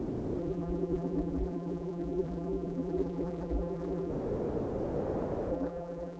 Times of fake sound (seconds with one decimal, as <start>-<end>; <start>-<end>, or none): 0.4-4.1; 5.5-6.2